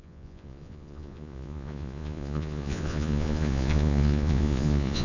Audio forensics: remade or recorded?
remade